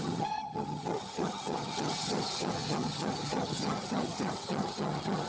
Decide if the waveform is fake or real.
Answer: fake